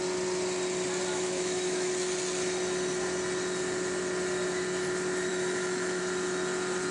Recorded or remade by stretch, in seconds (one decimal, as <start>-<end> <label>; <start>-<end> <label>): 0.0-1.1 recorded; 1.1-1.9 remade; 1.9-5.3 recorded; 5.3-6.0 remade; 6.0-6.9 recorded